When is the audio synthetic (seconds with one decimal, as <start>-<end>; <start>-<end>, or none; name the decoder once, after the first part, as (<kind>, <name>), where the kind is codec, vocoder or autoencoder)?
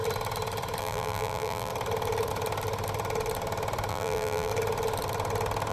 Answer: 0.8-1.7 (vocoder, BigVGAN v2); 3.9-4.5